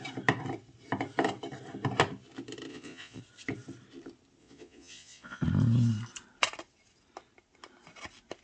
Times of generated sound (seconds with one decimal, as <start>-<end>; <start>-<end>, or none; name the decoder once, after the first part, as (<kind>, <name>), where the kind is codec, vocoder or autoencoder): 2.7-3.2 (vocoder, Vocos); 4.4-5.4